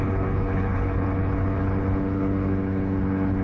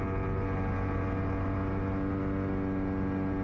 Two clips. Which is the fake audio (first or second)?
first